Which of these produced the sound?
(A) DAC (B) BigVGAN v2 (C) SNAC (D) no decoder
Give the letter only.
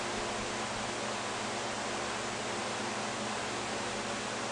D